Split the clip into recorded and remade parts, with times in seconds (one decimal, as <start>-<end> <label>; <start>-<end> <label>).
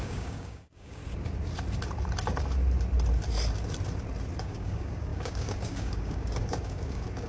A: 0.0-1.0 remade; 1.0-4.4 recorded; 4.4-7.3 remade